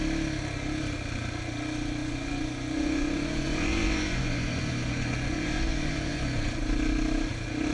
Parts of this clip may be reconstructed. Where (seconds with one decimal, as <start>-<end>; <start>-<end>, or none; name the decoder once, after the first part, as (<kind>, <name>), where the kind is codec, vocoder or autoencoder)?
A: 2.0-6.6 (vocoder, Vocos)